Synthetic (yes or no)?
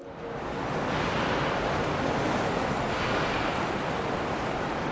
no